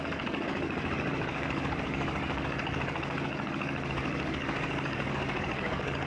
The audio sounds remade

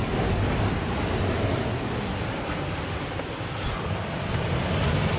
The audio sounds recorded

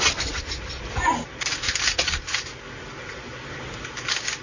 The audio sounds recorded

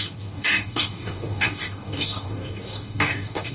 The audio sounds remade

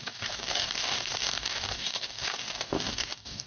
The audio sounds remade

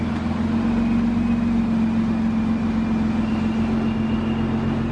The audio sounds recorded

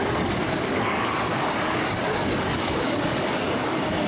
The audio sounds remade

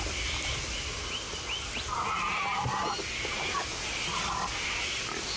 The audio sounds recorded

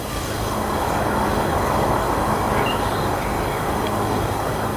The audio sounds remade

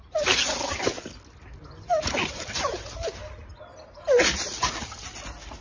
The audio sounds recorded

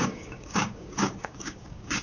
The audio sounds remade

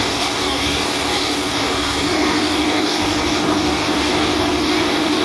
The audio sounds remade